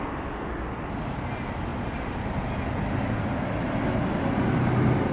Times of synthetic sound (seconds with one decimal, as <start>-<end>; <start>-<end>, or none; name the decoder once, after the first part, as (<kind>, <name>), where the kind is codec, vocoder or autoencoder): none